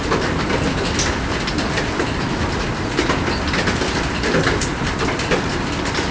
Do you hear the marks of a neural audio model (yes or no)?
no